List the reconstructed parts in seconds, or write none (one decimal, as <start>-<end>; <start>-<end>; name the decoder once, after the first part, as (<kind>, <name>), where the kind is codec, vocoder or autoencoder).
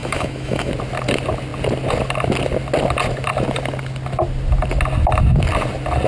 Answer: 0.0-0.7 (autoencoder, DAC-VAE)